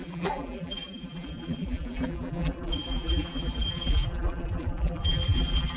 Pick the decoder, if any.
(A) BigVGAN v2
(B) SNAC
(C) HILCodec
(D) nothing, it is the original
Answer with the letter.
A